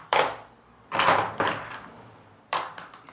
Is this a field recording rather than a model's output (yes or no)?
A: no